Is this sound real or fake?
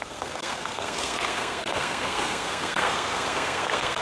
fake